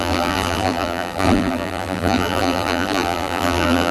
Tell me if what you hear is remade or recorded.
remade